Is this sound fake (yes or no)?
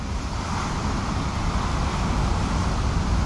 no